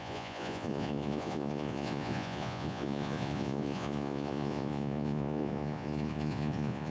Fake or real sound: fake